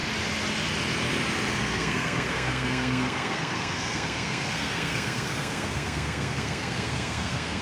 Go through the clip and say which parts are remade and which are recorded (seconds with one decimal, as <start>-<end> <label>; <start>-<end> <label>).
0.0-1.6 recorded; 1.6-7.6 remade

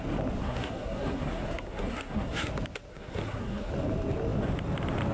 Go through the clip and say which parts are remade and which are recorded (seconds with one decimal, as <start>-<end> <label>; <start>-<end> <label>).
0.0-0.4 recorded; 0.4-2.5 remade; 2.5-2.9 recorded; 2.9-3.7 remade; 3.7-5.1 recorded

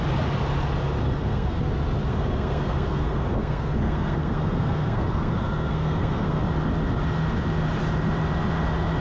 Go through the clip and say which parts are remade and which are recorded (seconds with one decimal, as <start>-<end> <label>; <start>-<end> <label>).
0.0-1.0 recorded; 1.0-1.6 remade; 1.6-2.1 recorded; 2.1-6.4 remade; 6.4-9.0 recorded

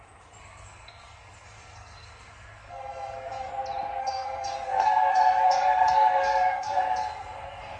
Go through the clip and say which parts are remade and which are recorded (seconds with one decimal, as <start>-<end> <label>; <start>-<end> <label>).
0.0-0.4 recorded; 0.4-3.5 remade; 3.5-4.0 recorded; 4.0-7.8 remade

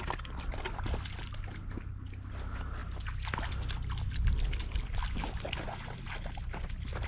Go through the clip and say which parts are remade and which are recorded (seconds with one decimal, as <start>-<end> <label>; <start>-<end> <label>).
0.0-7.1 recorded

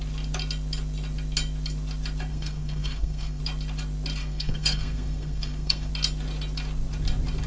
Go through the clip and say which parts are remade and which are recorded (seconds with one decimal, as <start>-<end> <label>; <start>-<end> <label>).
0.0-2.3 recorded; 2.3-3.4 remade; 3.4-4.2 recorded; 4.2-5.9 remade; 5.9-7.5 recorded

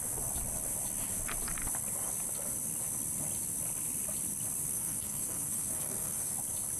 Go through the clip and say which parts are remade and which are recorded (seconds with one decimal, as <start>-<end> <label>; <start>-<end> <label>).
0.0-4.7 recorded; 4.7-6.3 remade; 6.3-6.8 recorded

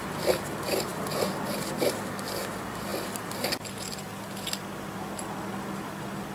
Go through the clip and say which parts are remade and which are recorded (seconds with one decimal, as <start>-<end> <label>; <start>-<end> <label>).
0.0-6.3 recorded